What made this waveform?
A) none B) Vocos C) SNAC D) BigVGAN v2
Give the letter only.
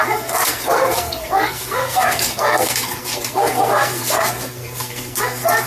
C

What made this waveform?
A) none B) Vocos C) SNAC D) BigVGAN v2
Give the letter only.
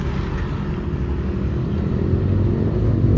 A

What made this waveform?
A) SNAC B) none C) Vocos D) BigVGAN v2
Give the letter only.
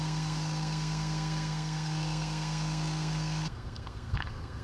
A